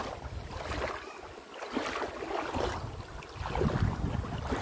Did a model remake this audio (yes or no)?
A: no